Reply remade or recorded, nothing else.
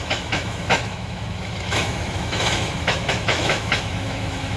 remade